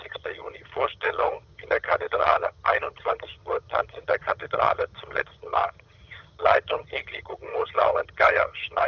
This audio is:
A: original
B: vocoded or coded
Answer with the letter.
B